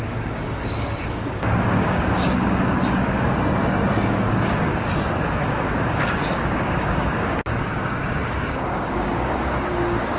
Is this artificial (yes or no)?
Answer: yes